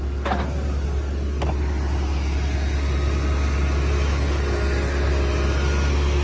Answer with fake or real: real